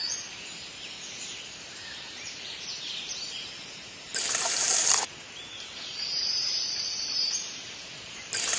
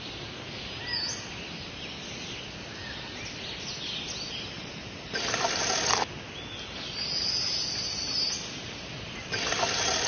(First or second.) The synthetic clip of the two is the first